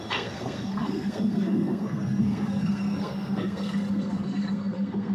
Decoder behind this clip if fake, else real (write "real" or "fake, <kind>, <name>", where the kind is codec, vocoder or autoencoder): fake, codec, SNAC